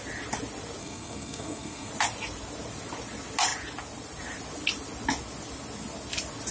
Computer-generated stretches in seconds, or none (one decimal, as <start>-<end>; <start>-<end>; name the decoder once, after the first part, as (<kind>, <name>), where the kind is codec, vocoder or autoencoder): 0.8-1.9 (codec, SNAC)